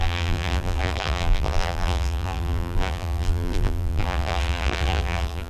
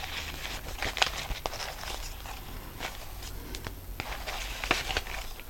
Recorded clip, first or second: second